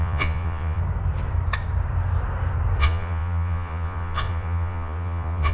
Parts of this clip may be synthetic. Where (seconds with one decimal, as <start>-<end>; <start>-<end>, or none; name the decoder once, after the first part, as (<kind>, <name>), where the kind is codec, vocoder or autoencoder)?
0.0-0.8 (vocoder, Vocos); 2.8-5.5